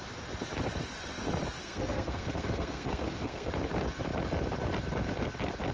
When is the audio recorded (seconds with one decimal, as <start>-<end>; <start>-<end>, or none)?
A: 0.0-1.6; 3.5-5.7